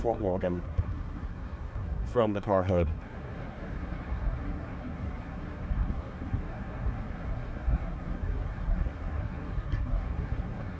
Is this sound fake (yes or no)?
yes